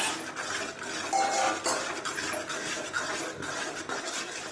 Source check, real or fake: real